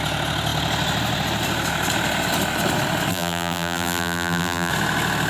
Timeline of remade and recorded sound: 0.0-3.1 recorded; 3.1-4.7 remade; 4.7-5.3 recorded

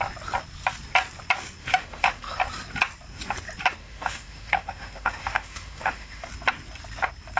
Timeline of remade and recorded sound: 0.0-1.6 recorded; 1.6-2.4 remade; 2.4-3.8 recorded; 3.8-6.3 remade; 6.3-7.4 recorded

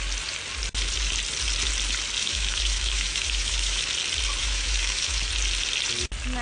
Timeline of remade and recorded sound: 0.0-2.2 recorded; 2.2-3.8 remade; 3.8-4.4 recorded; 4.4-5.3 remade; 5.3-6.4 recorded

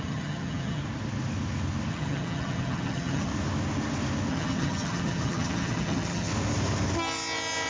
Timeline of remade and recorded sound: 0.0-0.8 remade; 0.8-1.9 recorded; 1.9-3.3 remade; 3.3-4.3 recorded; 4.3-6.3 remade; 6.3-7.7 recorded

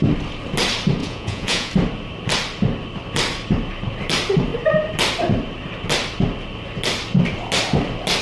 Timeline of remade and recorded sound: 0.0-1.0 recorded; 1.0-1.7 remade; 1.7-8.2 recorded

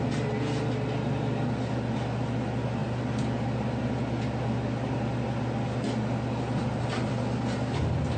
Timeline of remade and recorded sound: 0.0-8.2 recorded

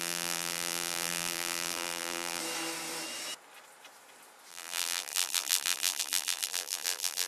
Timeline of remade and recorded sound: 0.0-2.4 remade; 2.4-4.5 recorded; 4.5-7.3 remade